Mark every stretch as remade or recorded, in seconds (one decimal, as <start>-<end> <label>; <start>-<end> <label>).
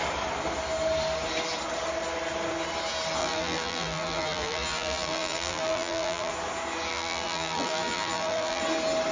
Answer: 0.0-3.2 recorded; 3.2-6.3 remade; 6.3-6.9 recorded; 6.9-8.6 remade; 8.6-9.1 recorded